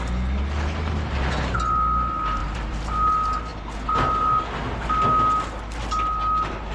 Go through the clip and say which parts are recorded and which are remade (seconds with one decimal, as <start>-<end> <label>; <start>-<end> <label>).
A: 0.0-2.4 recorded; 2.4-3.1 remade; 3.1-6.7 recorded